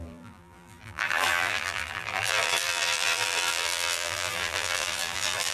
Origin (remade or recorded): remade